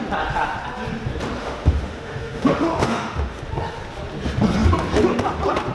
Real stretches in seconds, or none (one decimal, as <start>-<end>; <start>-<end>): 0.0-1.4; 3.4-5.7

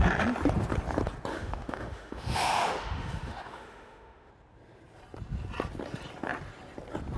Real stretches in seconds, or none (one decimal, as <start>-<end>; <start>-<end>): 0.0-1.3; 4.3-7.2

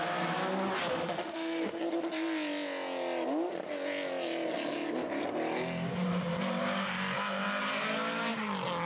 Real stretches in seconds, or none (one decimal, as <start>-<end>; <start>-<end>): 0.0-0.9; 1.8-8.9

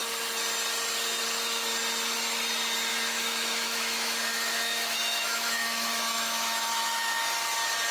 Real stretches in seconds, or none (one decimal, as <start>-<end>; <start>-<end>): 0.0-2.9; 7.2-7.9